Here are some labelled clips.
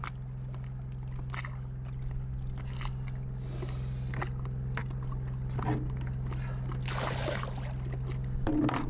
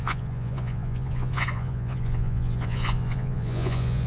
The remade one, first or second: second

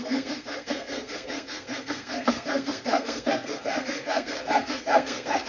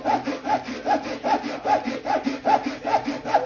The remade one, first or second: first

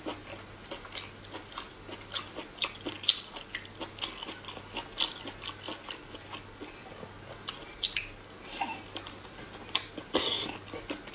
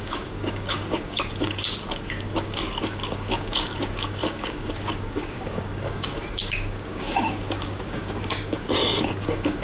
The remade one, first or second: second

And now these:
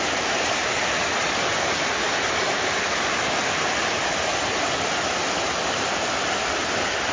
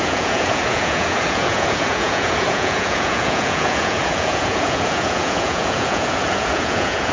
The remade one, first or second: second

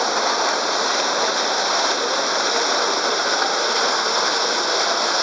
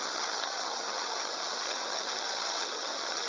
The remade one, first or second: second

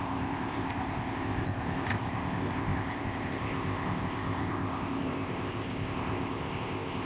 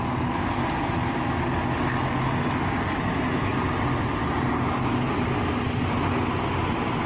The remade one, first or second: first